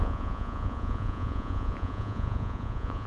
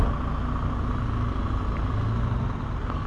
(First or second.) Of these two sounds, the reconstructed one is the first